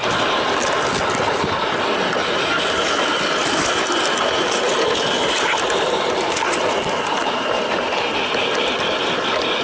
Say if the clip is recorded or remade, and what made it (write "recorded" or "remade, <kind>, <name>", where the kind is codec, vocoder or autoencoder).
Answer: recorded